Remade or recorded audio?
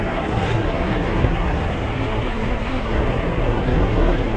remade